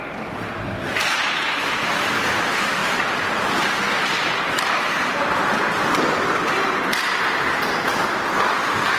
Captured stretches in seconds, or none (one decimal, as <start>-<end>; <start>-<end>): none